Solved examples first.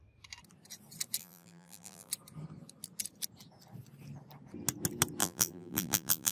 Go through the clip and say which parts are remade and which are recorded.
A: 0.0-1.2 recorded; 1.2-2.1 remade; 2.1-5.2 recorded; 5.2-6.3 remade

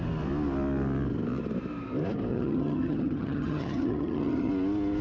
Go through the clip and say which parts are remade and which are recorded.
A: 0.0-2.3 recorded; 2.3-4.5 remade; 4.5-5.0 recorded

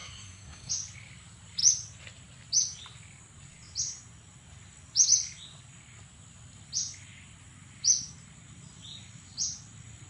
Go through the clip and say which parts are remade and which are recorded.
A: 0.0-0.7 remade; 0.7-10.1 recorded

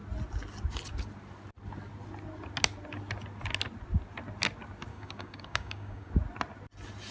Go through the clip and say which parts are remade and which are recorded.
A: 0.0-4.9 recorded; 4.9-6.1 remade; 6.1-7.1 recorded

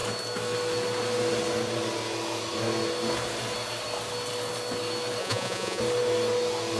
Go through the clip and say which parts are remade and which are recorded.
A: 0.0-5.2 recorded; 5.2-5.8 remade; 5.8-6.8 recorded

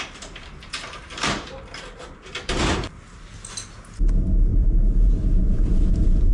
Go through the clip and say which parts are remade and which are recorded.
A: 0.0-1.0 recorded; 1.0-3.2 remade; 3.2-4.5 recorded; 4.5-5.1 remade; 5.1-5.5 recorded; 5.5-6.3 remade

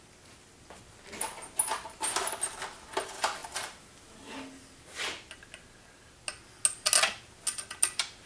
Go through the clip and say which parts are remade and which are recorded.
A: 0.0-8.3 recorded

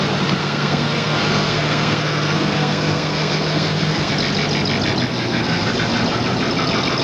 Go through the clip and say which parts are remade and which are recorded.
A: 0.0-0.4 recorded; 0.4-4.1 remade; 4.1-5.1 recorded; 5.1-5.7 remade; 5.7-7.0 recorded